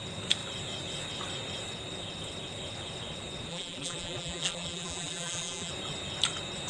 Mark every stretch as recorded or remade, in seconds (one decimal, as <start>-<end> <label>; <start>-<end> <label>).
0.0-3.5 recorded; 3.5-5.7 remade; 5.7-6.7 recorded